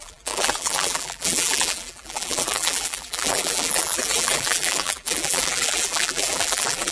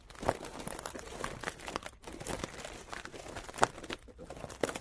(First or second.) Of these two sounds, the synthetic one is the first